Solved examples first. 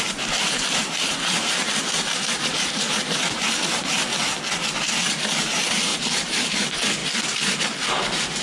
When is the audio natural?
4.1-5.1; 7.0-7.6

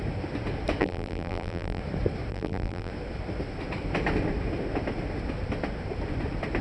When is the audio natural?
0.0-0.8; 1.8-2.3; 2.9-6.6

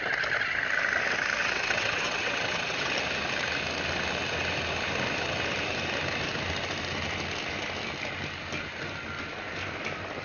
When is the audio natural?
0.0-1.4; 2.9-10.2

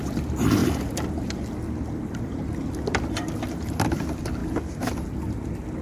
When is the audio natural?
0.0-5.8

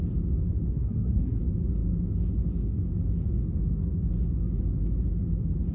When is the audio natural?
0.0-0.7; 1.4-5.7

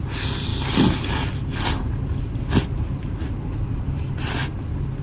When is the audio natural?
0.0-5.0

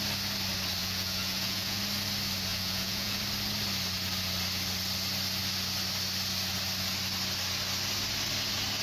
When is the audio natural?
0.0-0.8; 1.8-2.5; 3.2-8.8